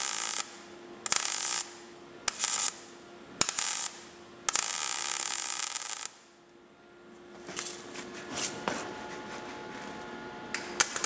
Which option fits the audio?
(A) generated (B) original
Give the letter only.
B